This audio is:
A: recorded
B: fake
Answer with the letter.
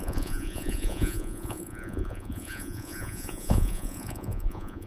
B